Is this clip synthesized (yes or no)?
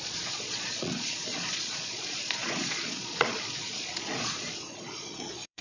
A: yes